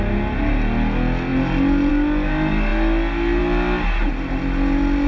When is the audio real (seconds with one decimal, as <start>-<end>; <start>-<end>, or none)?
0.0-5.1